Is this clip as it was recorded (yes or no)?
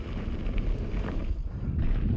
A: yes